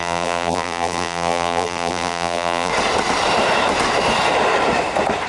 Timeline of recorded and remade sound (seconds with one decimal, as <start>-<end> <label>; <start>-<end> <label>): 0.0-2.7 remade; 2.7-5.3 recorded